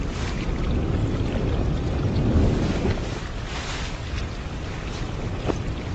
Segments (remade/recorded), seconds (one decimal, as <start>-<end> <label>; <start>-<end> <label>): 0.0-1.0 remade; 1.0-1.7 recorded; 1.7-2.4 remade; 2.4-4.1 recorded; 4.1-5.9 remade